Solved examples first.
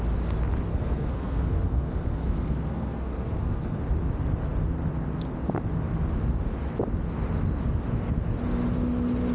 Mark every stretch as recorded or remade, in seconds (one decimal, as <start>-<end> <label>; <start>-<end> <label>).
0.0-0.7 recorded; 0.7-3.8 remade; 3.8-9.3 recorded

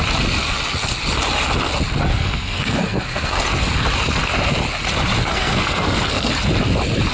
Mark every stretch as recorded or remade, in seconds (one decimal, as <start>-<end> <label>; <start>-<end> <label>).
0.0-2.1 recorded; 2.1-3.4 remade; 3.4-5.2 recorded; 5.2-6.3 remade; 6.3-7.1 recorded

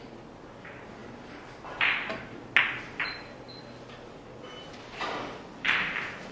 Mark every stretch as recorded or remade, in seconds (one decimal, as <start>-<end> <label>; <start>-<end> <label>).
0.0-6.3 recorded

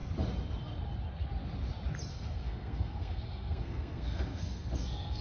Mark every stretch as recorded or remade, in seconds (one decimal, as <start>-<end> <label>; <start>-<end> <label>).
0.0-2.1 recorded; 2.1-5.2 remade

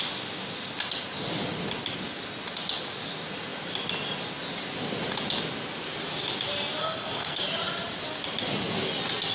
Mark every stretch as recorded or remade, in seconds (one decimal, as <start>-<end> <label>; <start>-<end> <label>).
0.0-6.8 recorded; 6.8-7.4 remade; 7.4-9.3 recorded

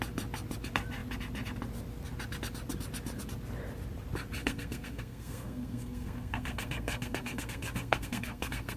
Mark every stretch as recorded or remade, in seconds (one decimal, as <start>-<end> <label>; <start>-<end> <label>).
0.0-4.4 recorded; 4.4-8.8 remade